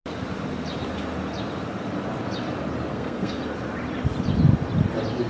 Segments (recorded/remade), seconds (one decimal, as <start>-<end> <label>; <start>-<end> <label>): 0.0-2.9 recorded; 2.9-3.4 remade; 3.4-5.3 recorded